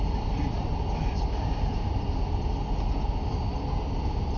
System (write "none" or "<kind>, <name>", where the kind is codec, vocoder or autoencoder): none